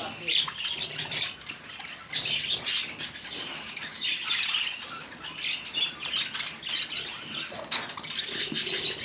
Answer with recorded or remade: recorded